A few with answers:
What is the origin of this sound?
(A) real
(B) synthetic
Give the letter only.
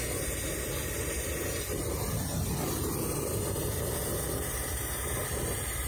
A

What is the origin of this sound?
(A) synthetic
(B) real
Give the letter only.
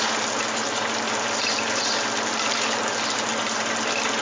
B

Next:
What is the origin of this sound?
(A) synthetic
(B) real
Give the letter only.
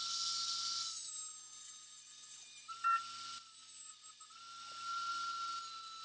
B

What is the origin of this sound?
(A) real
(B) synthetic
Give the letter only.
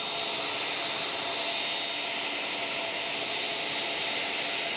A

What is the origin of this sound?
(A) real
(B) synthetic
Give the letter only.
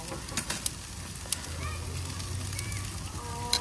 A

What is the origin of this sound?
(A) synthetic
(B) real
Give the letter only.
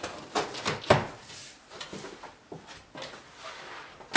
B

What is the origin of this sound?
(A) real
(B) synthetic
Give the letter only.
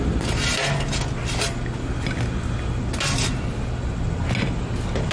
A